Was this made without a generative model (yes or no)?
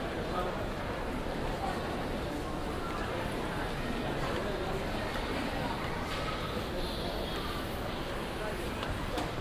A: no